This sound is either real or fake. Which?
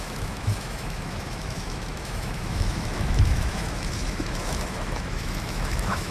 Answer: fake